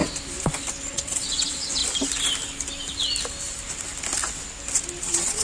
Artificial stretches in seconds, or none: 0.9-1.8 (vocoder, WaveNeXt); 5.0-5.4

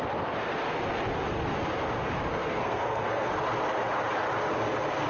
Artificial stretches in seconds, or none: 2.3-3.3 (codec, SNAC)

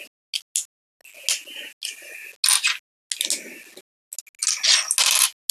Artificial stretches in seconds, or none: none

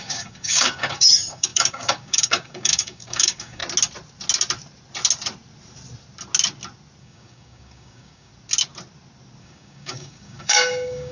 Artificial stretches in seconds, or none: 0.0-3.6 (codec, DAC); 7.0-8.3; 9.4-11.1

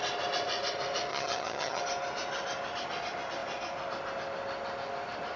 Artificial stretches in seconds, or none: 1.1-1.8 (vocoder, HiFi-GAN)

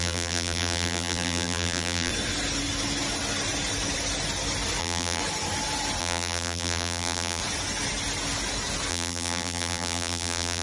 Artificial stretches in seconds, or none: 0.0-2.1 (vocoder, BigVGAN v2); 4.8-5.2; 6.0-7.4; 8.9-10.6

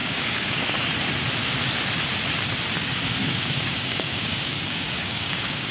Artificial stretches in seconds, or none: 0.0-0.6 (codec, DAC); 3.2-5.7

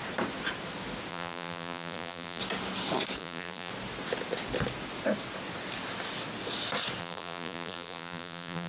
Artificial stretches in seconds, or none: 1.1-2.4 (vocoder, BigVGAN v2); 3.2-3.7; 7.0-8.7